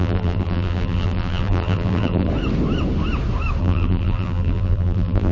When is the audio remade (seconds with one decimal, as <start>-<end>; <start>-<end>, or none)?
0.0-2.3; 3.6-5.3